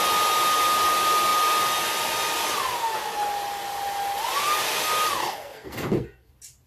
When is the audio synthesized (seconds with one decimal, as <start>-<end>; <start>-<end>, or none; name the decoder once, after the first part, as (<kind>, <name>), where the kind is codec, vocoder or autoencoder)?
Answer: 5.2-6.3 (codec, SNAC)